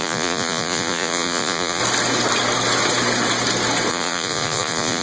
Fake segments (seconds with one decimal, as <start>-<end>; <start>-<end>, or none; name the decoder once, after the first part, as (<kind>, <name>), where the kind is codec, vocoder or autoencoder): 0.0-1.8 (vocoder, Vocos); 3.9-5.0